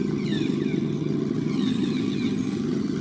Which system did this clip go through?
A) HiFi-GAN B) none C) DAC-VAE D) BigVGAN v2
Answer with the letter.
A